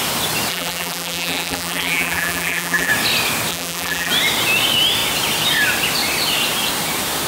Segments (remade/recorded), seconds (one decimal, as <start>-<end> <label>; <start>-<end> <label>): 0.0-0.5 recorded; 0.5-2.9 remade; 2.9-3.5 recorded; 3.5-4.1 remade; 4.1-7.3 recorded